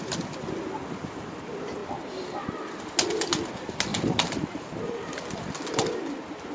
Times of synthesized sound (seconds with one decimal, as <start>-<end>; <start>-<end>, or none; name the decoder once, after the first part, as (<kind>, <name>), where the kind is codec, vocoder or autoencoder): 3.9-5.1 (vocoder, BigVGAN v2)